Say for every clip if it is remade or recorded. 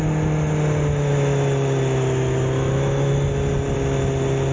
recorded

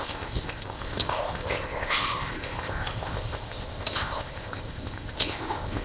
remade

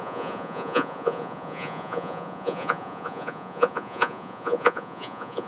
remade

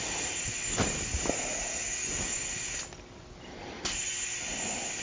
recorded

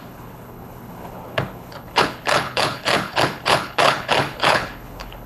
remade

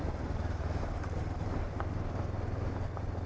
recorded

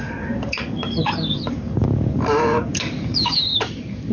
remade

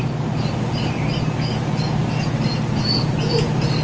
recorded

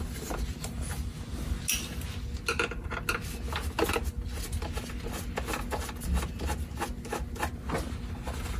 recorded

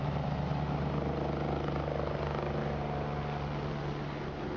recorded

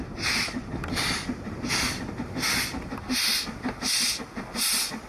recorded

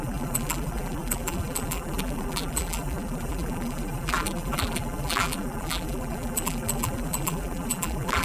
remade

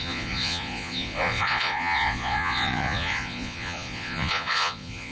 remade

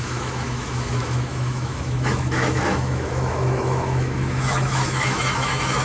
remade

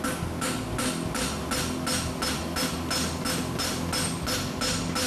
recorded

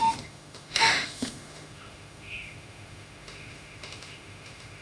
remade